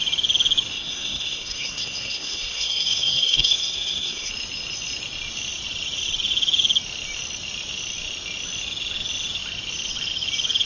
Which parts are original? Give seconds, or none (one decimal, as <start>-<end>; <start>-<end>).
0.0-0.7; 4.3-10.7